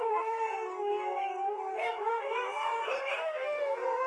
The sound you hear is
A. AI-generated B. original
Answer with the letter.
A